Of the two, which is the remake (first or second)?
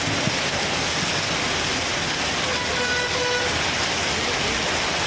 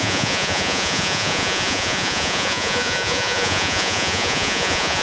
second